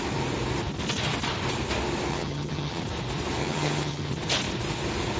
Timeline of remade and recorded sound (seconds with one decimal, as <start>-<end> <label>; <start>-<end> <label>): 0.0-2.1 recorded; 2.1-2.8 remade; 2.8-3.4 recorded; 3.4-4.1 remade; 4.1-5.2 recorded